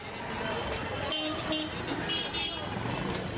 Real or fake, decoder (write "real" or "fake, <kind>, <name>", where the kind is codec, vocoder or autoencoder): real